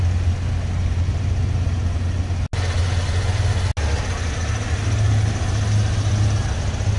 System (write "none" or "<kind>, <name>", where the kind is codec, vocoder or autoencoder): none